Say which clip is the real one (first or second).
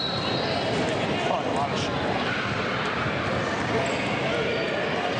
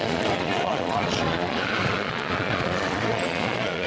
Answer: first